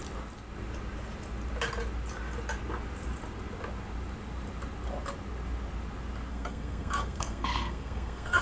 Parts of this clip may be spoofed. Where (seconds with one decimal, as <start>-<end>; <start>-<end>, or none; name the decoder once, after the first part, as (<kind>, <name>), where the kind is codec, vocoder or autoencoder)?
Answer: 6.3-8.4 (codec, SNAC)